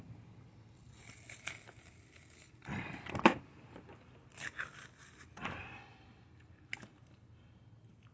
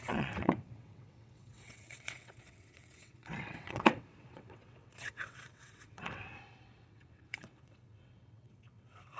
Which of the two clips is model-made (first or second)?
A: second